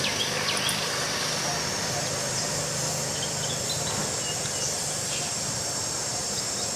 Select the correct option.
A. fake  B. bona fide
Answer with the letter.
B